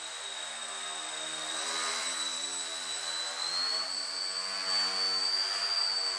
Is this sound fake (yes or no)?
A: no